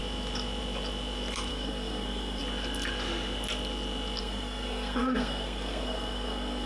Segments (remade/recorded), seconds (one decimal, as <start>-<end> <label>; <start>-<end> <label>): 0.0-1.5 recorded; 1.5-2.4 remade; 2.4-4.2 recorded; 4.2-6.7 remade